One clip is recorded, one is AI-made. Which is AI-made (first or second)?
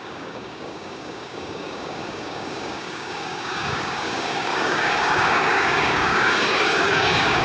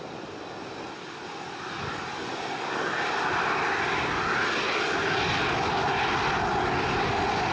first